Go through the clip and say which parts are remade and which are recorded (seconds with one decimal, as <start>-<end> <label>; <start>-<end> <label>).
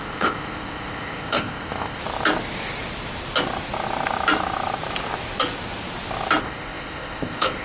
0.0-2.0 remade; 2.0-6.4 recorded; 6.4-7.6 remade